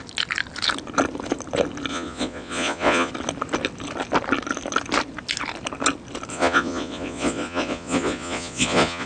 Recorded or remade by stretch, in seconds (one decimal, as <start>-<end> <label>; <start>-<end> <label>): 0.0-1.9 recorded; 1.9-3.1 remade; 3.1-6.3 recorded; 6.3-9.1 remade

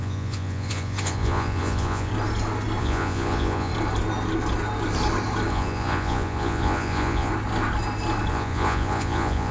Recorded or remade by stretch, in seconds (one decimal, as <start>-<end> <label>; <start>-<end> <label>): 0.0-2.1 remade; 2.1-2.8 recorded; 2.8-3.7 remade; 3.7-5.5 recorded; 5.5-7.3 remade; 7.3-8.3 recorded; 8.3-9.5 remade

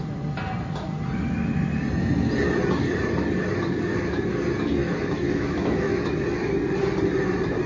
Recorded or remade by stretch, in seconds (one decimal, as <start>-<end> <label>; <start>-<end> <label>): 0.0-4.8 recorded; 4.8-6.1 remade; 6.1-7.7 recorded

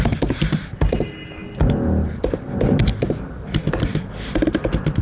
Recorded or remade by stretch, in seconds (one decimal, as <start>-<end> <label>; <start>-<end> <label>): 0.0-5.0 recorded